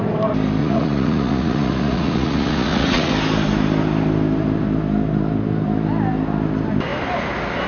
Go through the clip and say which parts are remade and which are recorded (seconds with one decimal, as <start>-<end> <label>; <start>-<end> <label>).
0.0-0.6 recorded; 0.6-3.1 remade; 3.1-7.7 recorded